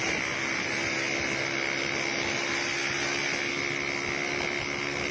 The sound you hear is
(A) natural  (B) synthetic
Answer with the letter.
A